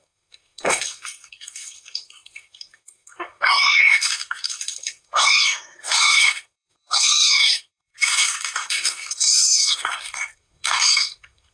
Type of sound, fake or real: fake